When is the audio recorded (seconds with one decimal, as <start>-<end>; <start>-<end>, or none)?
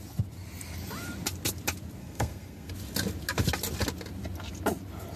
0.0-2.0; 2.7-5.2